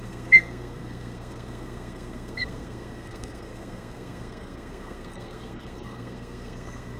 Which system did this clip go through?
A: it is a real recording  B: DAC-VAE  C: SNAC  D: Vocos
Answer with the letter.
C